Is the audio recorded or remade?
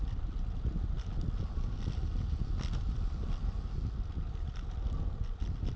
recorded